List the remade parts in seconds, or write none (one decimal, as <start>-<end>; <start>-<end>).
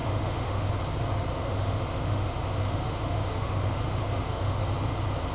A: 0.0-0.7; 1.4-4.6